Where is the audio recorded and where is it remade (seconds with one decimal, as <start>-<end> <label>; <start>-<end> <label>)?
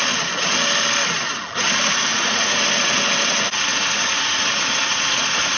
0.0-2.1 recorded; 2.1-2.6 remade; 2.6-3.7 recorded; 3.7-5.6 remade